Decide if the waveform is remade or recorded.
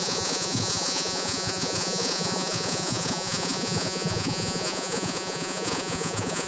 remade